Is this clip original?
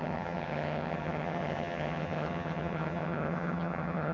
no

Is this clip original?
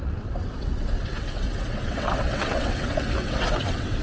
no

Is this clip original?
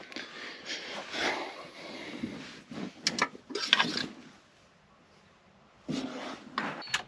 yes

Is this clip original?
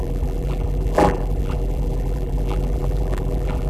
no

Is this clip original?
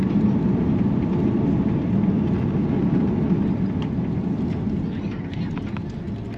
yes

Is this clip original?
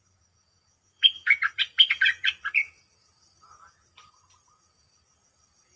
no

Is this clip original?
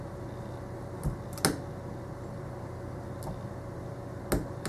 yes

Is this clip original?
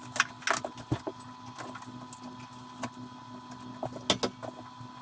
yes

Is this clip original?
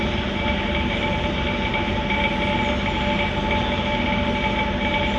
yes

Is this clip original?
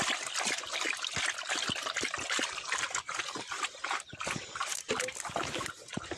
yes